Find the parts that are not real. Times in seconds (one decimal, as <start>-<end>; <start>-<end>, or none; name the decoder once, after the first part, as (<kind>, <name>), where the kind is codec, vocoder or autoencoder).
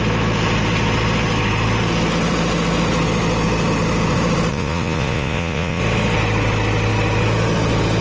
4.5-5.8 (vocoder, Vocos)